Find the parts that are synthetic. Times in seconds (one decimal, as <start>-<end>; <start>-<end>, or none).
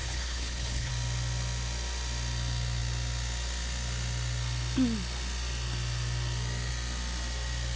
0.0-0.9